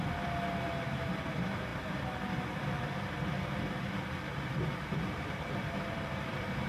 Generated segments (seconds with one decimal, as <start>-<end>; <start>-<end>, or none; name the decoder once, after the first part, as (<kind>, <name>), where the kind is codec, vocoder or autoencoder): none